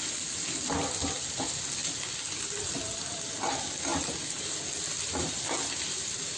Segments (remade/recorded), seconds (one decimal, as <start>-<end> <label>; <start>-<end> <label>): 0.0-6.4 recorded